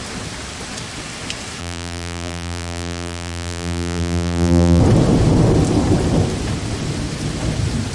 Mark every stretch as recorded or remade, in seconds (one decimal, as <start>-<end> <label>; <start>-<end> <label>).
0.0-1.6 recorded; 1.6-4.8 remade; 4.8-7.9 recorded

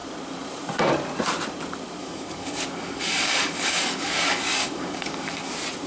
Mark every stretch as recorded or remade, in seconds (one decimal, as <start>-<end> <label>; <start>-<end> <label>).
0.0-2.0 recorded; 2.0-5.5 remade; 5.5-5.9 recorded